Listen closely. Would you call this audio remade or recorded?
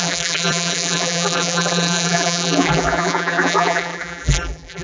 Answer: remade